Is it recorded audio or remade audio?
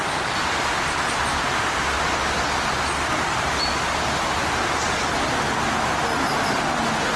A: recorded